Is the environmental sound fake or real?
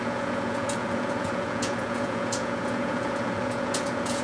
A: fake